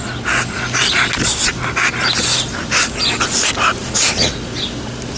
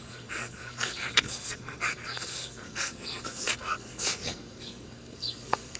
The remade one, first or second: second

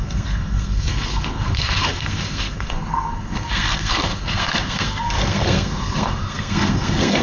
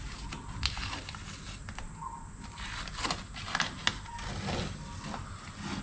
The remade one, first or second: first